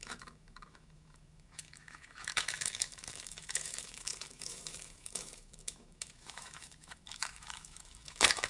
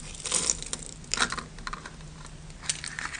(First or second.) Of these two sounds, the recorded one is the second